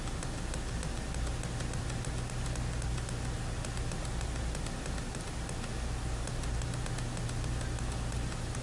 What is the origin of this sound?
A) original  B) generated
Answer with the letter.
A